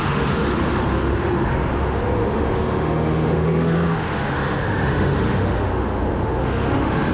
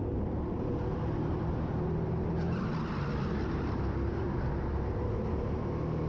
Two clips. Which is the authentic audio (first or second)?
second